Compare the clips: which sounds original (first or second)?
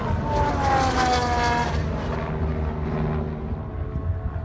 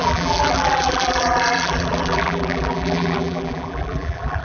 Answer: first